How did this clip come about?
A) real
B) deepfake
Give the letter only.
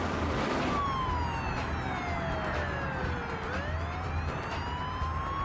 A